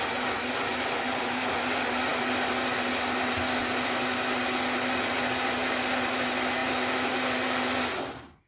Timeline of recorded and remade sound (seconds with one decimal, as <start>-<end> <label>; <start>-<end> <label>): 0.0-8.5 recorded